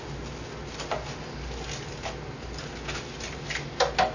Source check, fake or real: real